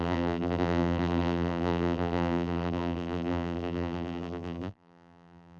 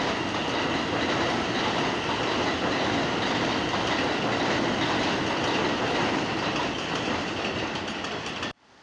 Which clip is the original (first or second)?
second